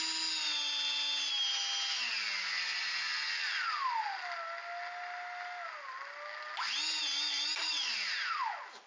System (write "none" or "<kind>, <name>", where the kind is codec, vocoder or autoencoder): none